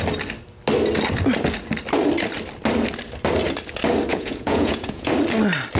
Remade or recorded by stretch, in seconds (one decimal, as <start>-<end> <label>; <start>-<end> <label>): 0.0-4.1 recorded; 4.1-5.1 remade; 5.1-5.8 recorded